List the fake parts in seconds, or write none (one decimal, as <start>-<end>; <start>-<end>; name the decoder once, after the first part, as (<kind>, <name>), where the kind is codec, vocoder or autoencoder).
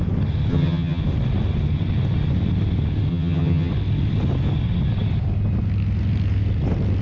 0.5-1.0 (vocoder, HiFi-GAN); 3.1-3.7